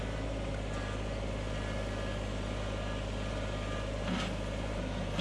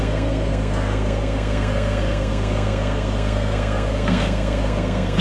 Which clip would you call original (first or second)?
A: first